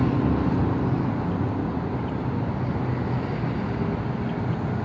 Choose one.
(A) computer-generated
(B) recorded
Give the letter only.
B